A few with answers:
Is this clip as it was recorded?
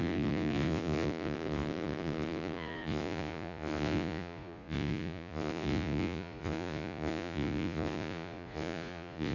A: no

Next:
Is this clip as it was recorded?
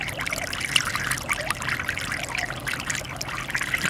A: yes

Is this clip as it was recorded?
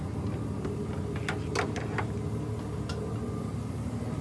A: yes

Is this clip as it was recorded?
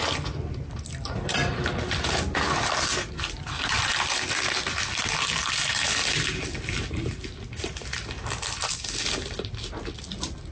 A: yes